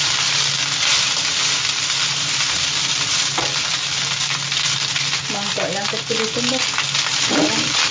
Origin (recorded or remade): recorded